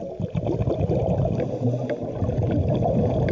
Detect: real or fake real